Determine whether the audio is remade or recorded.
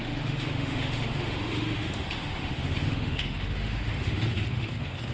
remade